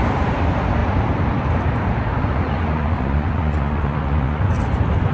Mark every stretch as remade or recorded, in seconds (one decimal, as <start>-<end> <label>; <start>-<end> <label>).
0.0-2.1 recorded; 2.1-4.5 remade; 4.5-5.1 recorded